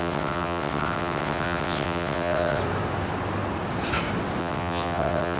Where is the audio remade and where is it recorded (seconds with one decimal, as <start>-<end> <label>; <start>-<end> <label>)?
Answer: 0.0-2.6 remade; 2.6-4.4 recorded; 4.4-5.4 remade